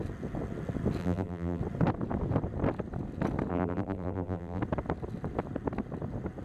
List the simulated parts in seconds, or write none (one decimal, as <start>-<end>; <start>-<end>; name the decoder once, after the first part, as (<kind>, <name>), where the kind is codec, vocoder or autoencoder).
1.0-1.6 (vocoder, BigVGAN v2); 3.5-4.6